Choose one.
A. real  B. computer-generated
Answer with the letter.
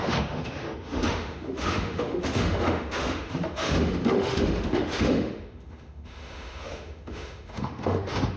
B